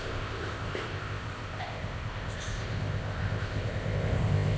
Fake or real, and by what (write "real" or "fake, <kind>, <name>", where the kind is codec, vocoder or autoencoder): fake, codec, ZipCodec